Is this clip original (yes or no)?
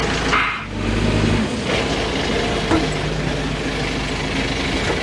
yes